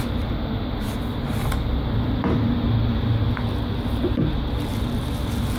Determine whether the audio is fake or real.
real